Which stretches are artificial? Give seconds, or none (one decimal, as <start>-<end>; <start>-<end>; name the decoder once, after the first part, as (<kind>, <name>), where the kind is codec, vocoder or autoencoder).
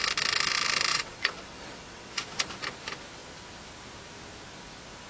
0.9-2.2 (vocoder, WaveNeXt)